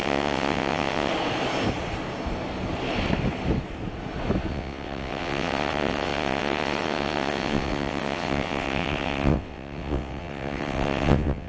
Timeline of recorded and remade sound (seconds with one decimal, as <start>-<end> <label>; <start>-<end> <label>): 0.0-1.1 remade; 1.1-4.5 recorded; 4.5-11.5 remade